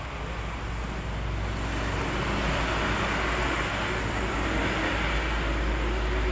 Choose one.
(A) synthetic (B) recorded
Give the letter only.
B